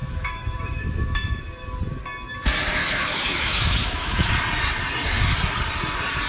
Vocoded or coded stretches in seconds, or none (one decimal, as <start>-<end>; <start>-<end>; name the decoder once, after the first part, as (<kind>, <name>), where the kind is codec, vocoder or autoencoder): 0.0-1.4 (autoencoder, DAC-VAE); 2.8-4.3